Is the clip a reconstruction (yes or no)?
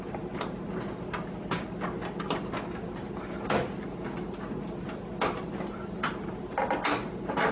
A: no